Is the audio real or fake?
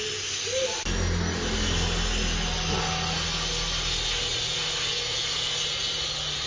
real